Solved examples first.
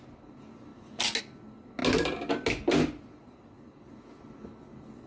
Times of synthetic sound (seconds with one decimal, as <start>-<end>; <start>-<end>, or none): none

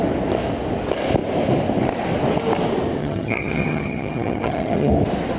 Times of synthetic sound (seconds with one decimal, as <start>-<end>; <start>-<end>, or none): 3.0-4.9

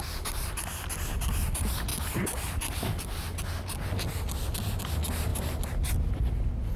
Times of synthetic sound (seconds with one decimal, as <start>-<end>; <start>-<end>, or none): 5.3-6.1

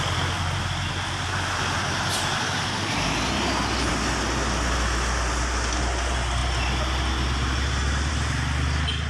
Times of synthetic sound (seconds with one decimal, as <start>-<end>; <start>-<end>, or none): none

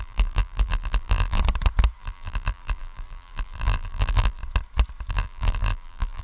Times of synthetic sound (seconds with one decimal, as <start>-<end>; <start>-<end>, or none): 0.0-1.4; 2.0-4.4; 5.1-6.2